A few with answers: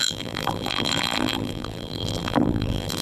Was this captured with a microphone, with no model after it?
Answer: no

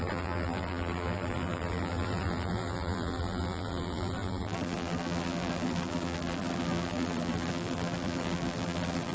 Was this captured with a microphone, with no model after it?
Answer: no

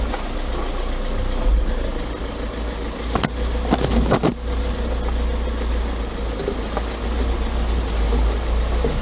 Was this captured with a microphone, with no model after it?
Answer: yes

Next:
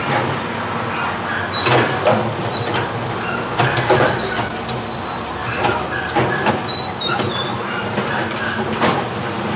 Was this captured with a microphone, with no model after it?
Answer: yes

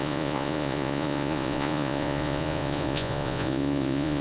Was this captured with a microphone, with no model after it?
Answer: no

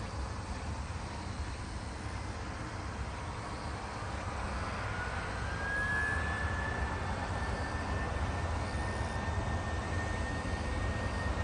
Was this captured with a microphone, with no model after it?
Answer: yes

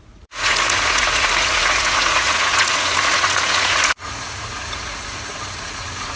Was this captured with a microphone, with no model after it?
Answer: no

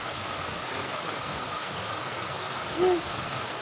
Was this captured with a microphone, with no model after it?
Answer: no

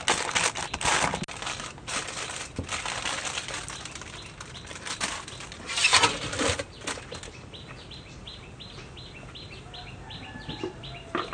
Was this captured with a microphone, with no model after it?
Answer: yes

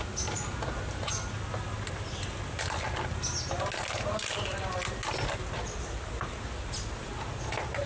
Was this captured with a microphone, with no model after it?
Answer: yes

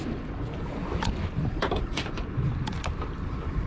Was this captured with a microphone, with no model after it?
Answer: no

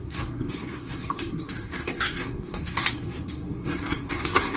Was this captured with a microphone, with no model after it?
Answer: no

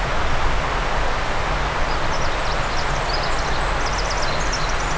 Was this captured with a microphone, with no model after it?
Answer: yes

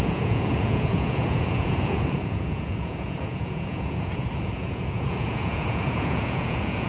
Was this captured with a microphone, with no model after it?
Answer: no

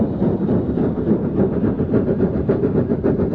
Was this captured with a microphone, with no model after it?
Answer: no